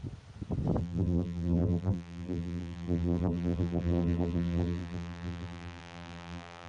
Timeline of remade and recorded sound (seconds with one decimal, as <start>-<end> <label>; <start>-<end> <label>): 0.0-0.8 recorded; 0.8-6.7 remade

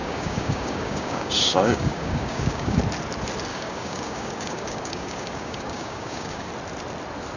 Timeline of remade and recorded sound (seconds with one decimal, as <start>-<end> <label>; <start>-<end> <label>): 0.0-2.8 remade; 2.8-3.5 recorded; 3.5-6.5 remade; 6.5-7.4 recorded

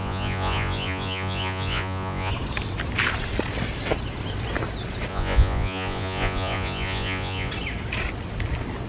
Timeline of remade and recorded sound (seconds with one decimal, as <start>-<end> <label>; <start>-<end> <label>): 0.0-2.3 remade; 2.3-5.1 recorded; 5.1-7.5 remade; 7.5-8.9 recorded

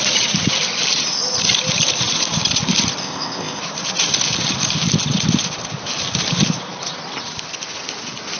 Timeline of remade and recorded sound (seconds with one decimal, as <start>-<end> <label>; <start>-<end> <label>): 0.0-3.0 recorded; 3.0-3.6 remade; 3.6-8.4 recorded

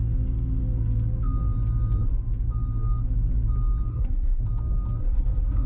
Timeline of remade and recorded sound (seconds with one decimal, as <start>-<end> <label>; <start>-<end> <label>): 0.0-3.9 recorded; 3.9-4.4 remade; 4.4-5.0 recorded; 5.0-5.7 remade

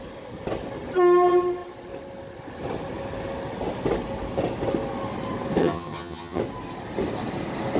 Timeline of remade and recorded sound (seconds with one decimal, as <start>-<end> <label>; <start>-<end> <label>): 0.0-5.6 recorded; 5.6-6.4 remade; 6.4-7.8 recorded